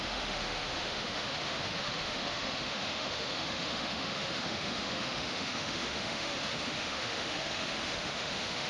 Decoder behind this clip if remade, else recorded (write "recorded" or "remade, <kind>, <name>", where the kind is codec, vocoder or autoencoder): remade, autoencoder, DAC-VAE